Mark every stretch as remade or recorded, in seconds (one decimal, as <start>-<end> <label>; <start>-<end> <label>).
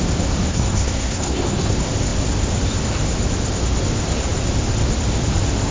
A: 0.0-0.5 recorded; 0.5-1.7 remade; 1.7-5.7 recorded